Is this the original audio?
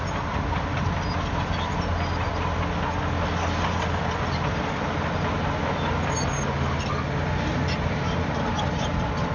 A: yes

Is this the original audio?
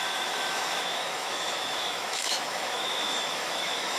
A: no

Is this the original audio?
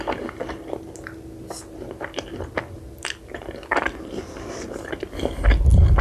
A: yes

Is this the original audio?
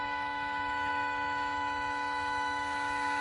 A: no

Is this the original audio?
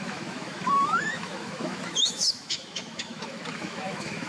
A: no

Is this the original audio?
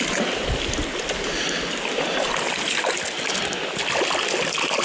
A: yes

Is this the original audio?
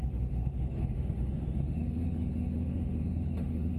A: no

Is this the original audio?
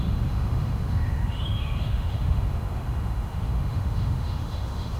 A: no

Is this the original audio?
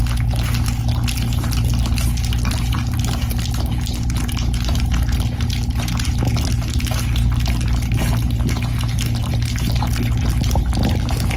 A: yes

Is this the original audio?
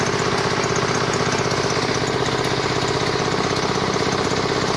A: yes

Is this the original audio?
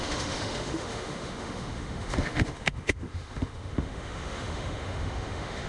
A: no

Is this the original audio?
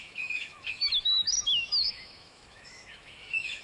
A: no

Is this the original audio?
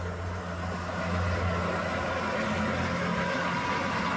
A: yes